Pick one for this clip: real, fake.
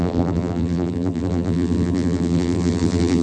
fake